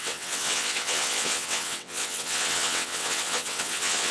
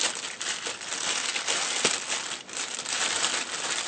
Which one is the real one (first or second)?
second